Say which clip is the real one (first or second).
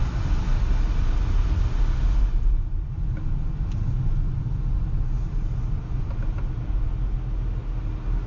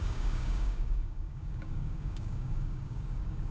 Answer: first